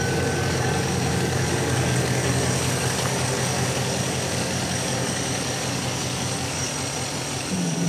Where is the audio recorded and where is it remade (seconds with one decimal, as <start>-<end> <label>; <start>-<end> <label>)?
0.0-6.7 remade; 6.7-7.2 recorded; 7.2-7.9 remade